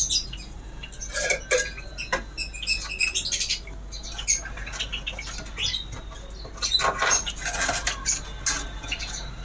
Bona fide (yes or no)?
yes